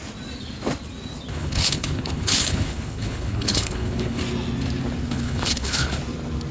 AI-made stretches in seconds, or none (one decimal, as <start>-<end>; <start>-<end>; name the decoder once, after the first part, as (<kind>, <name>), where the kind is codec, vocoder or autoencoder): 1.3-4.2 (codec, HILCodec); 5.1-6.0